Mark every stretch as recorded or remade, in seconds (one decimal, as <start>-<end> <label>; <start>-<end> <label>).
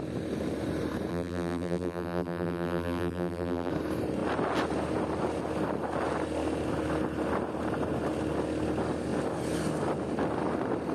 0.0-1.1 recorded; 1.1-3.7 remade; 3.7-10.9 recorded